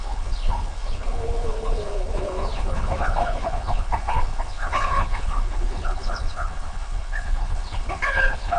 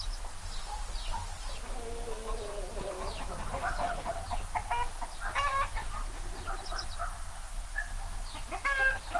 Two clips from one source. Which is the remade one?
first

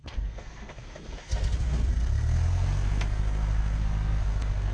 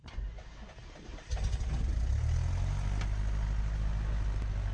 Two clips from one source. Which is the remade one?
first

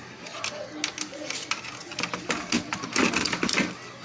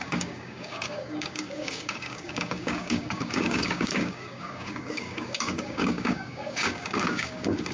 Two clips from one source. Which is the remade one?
second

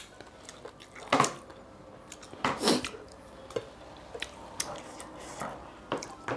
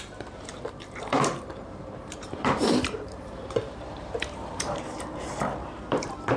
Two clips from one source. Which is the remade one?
second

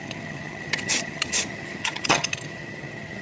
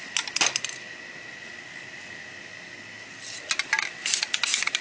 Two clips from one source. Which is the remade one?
first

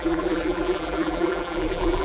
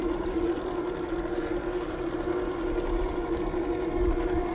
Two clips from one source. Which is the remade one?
first